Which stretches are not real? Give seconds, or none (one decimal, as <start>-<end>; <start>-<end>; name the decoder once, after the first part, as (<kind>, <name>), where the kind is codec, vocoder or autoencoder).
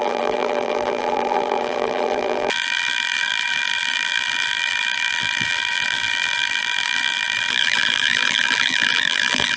0.0-9.6 (vocoder, BigVGAN v2)